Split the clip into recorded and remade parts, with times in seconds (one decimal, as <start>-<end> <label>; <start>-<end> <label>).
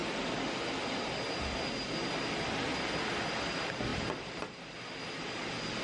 0.0-5.8 recorded